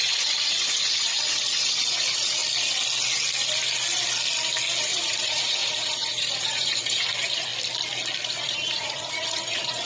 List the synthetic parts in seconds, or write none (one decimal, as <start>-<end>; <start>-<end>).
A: 0.0-2.4; 4.8-7.5; 8.2-9.9